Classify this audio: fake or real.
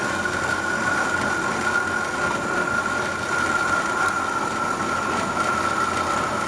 real